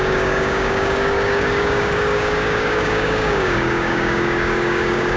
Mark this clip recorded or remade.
remade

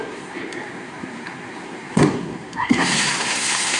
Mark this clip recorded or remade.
remade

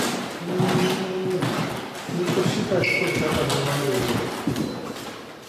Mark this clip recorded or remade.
recorded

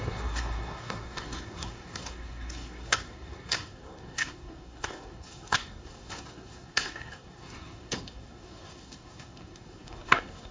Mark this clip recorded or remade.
remade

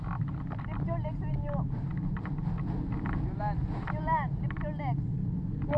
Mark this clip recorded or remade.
recorded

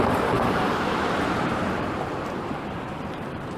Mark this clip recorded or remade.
remade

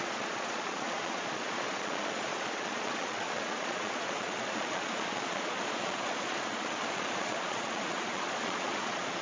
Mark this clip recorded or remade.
remade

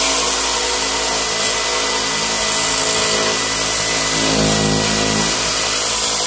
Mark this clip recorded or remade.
recorded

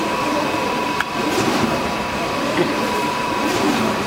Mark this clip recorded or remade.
remade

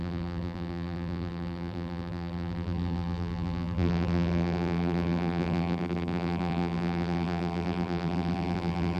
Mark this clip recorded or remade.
remade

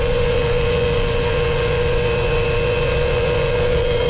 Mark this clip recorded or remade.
remade